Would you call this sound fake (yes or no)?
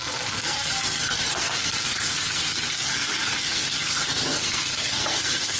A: yes